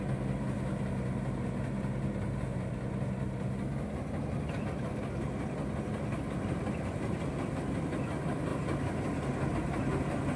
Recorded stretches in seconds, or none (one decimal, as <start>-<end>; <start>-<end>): 0.0-10.4